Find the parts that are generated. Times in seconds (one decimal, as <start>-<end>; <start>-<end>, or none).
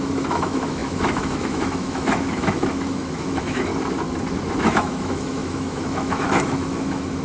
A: 0.0-3.7; 4.6-7.2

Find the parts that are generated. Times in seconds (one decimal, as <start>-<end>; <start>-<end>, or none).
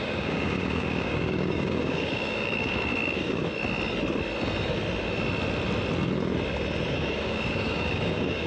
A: 0.0-3.4; 6.9-8.5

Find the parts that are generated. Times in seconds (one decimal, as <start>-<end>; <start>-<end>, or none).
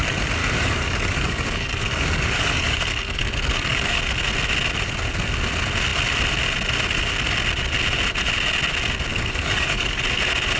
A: 0.4-4.0; 9.1-10.0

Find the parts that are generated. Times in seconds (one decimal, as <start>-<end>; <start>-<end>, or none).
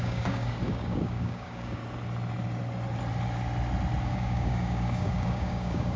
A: 0.0-1.8; 4.0-6.0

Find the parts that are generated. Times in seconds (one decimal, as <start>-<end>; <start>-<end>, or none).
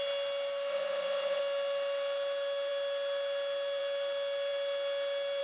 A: 0.7-1.4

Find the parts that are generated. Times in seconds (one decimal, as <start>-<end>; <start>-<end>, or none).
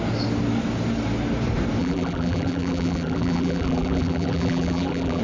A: 1.8-5.2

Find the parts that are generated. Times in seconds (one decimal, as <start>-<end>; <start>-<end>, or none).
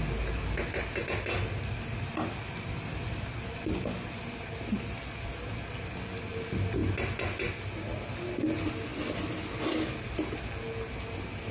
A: none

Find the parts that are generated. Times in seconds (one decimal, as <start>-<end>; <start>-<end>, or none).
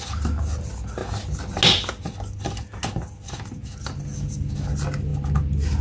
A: none